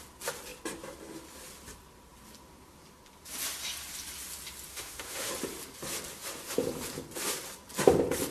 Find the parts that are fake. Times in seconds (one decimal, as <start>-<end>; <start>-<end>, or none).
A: 4.7-5.3